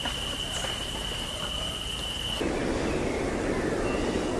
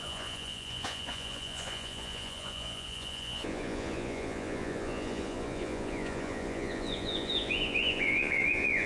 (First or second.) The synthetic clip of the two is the second